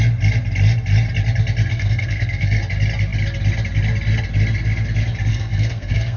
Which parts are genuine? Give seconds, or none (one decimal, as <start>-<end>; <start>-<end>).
0.0-1.7; 2.6-5.3